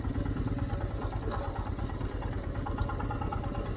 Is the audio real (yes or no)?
yes